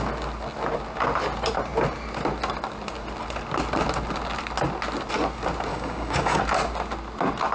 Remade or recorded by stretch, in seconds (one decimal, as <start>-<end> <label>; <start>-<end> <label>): 0.0-5.7 recorded; 5.7-6.4 remade; 6.4-7.5 recorded